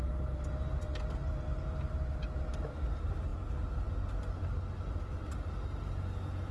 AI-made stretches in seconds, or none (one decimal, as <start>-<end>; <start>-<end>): none